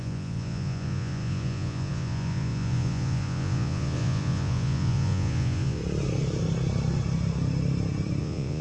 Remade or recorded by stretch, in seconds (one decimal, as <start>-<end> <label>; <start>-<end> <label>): 0.0-5.8 remade; 5.8-8.2 recorded; 8.2-8.6 remade